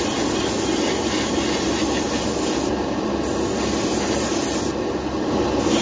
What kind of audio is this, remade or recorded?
recorded